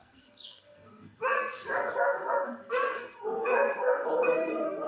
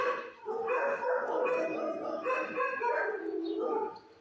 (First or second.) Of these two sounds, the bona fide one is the second